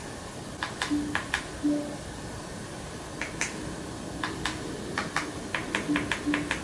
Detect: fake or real real